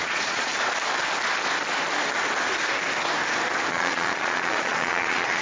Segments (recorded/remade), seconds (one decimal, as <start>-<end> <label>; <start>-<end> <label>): 0.0-0.5 remade; 0.5-3.7 recorded; 3.7-5.4 remade